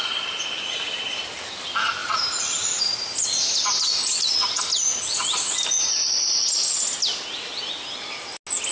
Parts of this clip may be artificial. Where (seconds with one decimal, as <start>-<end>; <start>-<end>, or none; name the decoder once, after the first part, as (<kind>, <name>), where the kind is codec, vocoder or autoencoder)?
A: 2.0-2.8 (vocoder, BigVGAN v2)